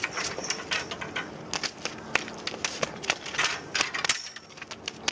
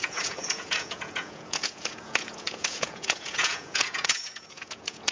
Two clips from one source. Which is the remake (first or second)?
second